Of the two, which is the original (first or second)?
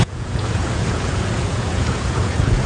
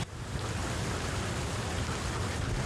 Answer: second